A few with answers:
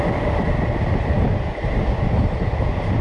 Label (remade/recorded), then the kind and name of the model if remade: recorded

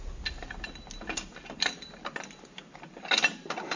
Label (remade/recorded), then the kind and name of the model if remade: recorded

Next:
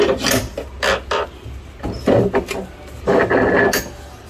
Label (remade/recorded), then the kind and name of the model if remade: recorded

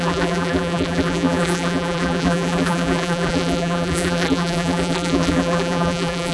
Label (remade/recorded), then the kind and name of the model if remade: remade, vocoder, BigVGAN v2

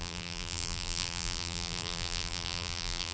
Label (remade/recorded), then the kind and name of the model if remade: remade, vocoder, BigVGAN v2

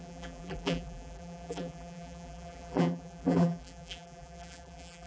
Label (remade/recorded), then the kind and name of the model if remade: remade, vocoder, BigVGAN v2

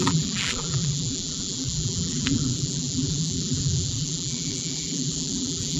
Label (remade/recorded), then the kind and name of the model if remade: remade, vocoder, BigVGAN v2